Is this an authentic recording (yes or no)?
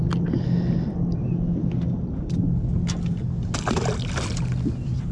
yes